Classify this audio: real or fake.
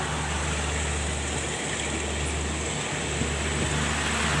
real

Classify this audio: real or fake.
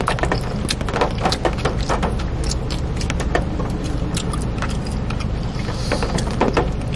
real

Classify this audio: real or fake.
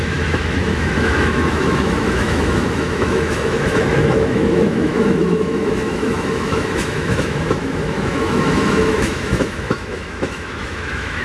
fake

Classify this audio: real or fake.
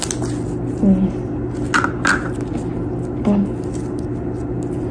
real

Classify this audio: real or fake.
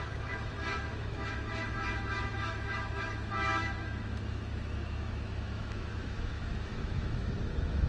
fake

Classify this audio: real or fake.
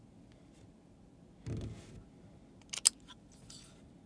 real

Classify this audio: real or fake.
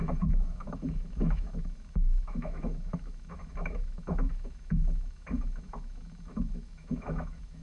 fake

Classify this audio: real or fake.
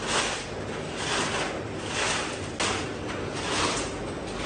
real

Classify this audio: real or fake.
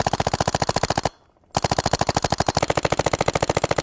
real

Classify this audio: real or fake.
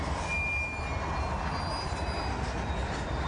real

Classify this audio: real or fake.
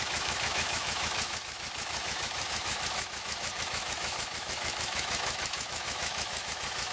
fake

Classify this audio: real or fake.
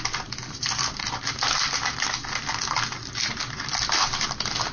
real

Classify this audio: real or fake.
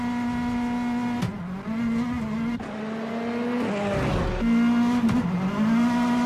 real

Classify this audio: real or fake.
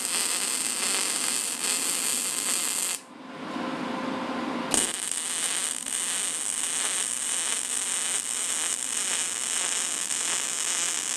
real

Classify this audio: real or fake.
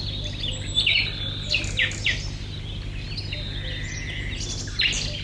real